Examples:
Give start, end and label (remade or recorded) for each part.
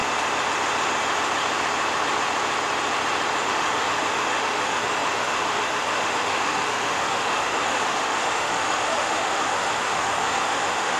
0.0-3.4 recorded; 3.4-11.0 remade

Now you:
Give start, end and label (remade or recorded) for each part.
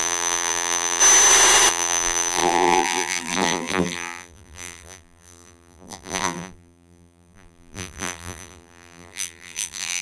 0.0-1.0 remade; 1.0-1.7 recorded; 1.7-10.0 remade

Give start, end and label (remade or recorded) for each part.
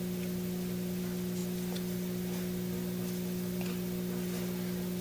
0.0-5.0 recorded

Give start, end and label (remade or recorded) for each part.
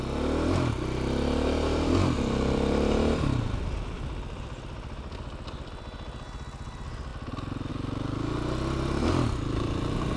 0.0-10.2 recorded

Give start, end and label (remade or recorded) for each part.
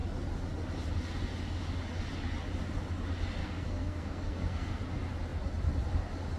0.0-3.4 recorded; 3.4-4.8 remade; 4.8-6.4 recorded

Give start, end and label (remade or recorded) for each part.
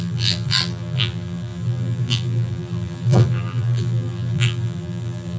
0.0-5.4 remade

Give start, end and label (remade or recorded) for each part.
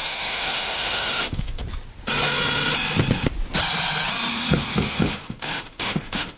0.0-1.6 remade; 1.6-4.3 recorded; 4.3-6.4 remade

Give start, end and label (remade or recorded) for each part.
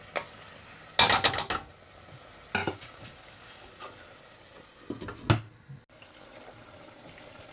0.0-2.6 recorded; 2.6-3.7 remade; 3.7-7.5 recorded